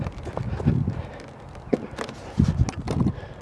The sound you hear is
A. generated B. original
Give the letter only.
B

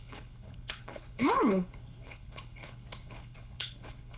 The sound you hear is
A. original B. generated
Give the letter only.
B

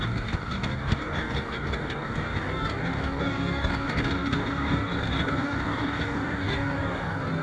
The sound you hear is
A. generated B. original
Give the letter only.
A